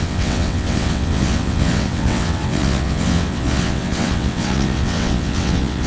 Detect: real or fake fake